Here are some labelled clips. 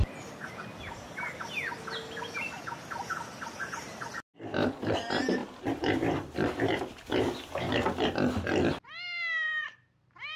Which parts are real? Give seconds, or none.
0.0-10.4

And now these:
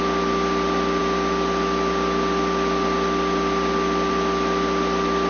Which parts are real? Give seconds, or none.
0.0-5.3

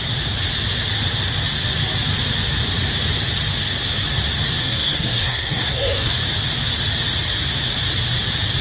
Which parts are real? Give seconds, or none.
0.0-4.6; 6.1-8.6

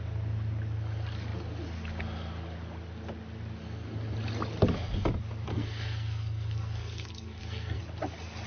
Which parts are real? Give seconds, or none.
0.0-5.5; 7.8-8.5

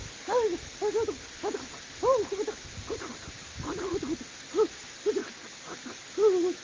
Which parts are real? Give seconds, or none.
0.0-6.6

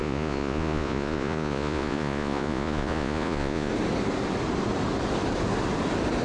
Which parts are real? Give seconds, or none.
3.7-6.2